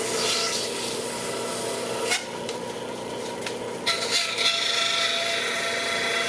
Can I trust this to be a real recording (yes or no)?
yes